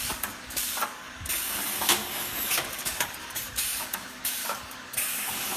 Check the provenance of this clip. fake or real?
fake